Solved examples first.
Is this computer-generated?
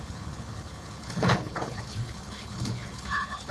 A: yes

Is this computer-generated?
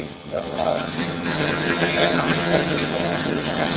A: yes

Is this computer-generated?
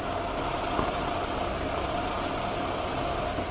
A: no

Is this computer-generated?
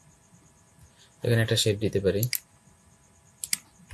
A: no